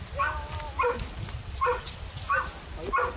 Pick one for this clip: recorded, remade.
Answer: recorded